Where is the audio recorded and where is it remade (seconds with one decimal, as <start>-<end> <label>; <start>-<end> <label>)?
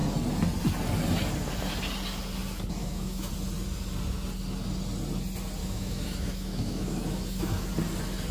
0.0-2.8 recorded; 2.8-3.3 remade; 3.3-5.6 recorded; 5.6-7.7 remade; 7.7-8.3 recorded